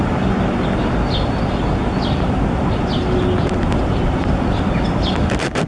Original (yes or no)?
yes